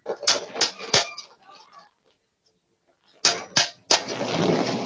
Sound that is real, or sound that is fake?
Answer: real